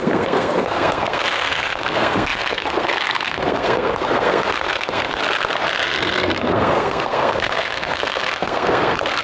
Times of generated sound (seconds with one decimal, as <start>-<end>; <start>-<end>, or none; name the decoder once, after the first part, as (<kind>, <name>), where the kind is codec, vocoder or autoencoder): 0.0-5.2 (codec, SNAC); 6.0-9.2